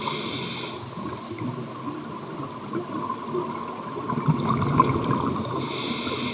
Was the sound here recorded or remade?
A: recorded